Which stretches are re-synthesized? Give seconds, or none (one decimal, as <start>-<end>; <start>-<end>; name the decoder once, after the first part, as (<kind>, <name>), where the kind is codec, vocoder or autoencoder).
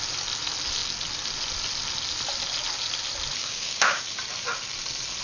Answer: 3.4-4.0 (codec, DAC)